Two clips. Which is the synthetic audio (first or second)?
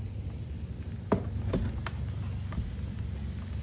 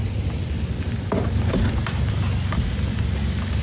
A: second